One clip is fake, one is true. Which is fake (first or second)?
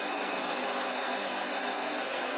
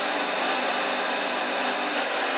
first